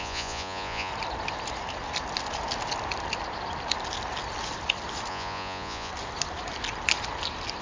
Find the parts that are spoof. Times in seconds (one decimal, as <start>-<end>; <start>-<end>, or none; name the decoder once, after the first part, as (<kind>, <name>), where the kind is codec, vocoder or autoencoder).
0.0-0.9 (vocoder, Vocos); 5.1-5.9